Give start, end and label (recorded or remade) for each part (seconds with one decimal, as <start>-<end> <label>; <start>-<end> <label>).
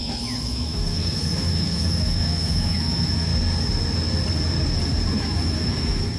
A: 0.0-3.3 remade; 3.3-5.1 recorded; 5.1-6.2 remade